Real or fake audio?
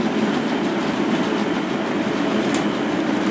real